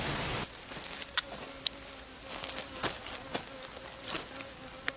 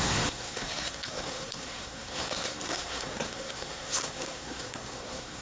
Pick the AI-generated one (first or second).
second